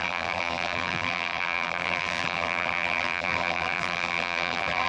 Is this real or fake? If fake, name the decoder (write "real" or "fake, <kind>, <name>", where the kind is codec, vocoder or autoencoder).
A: fake, vocoder, BigVGAN v2